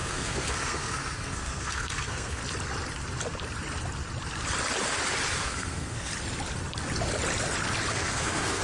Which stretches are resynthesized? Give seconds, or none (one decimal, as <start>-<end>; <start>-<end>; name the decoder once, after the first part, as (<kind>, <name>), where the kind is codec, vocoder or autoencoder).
0.0-2.4 (codec, SNAC); 5.4-6.1; 7.9-8.6